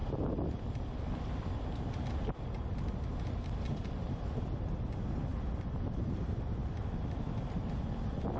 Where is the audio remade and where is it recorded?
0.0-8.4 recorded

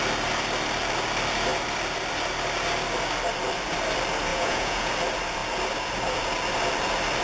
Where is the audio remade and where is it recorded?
0.0-4.3 recorded; 4.3-4.9 remade; 4.9-7.2 recorded

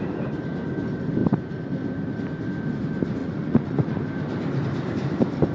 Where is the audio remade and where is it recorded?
0.0-3.2 recorded; 3.2-4.0 remade; 4.0-5.5 recorded

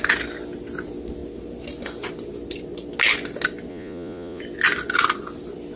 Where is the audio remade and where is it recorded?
0.0-3.7 recorded; 3.7-4.4 remade; 4.4-5.8 recorded